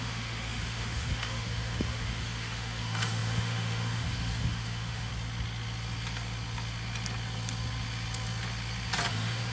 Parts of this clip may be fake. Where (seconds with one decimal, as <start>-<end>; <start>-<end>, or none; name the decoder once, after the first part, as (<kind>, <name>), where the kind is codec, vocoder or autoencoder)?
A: 0.0-5.1 (autoencoder, DAC-VAE); 9.1-9.5